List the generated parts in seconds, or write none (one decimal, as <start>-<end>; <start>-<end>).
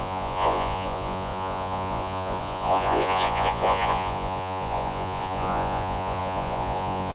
0.0-7.1